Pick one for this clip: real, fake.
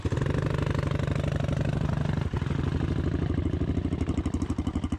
real